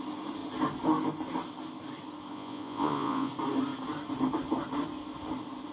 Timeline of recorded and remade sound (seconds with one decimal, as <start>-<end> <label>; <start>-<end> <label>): 0.0-2.3 recorded; 2.3-3.3 remade; 3.3-5.7 recorded